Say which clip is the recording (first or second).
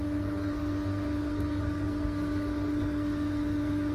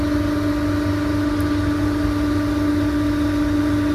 second